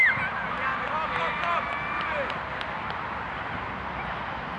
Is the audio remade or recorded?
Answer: recorded